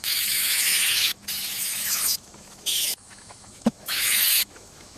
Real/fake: fake